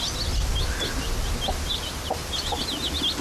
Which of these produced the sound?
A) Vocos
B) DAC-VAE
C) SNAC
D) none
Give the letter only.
D